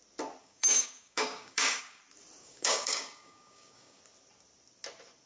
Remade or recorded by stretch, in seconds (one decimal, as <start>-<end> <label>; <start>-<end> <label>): 0.0-0.4 recorded; 0.4-2.0 remade; 2.0-2.4 recorded; 2.4-4.0 remade; 4.0-5.3 recorded